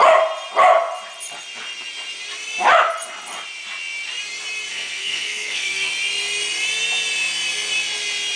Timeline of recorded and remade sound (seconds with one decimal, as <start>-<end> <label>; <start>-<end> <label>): 0.0-4.7 recorded; 4.7-5.9 remade; 5.9-8.4 recorded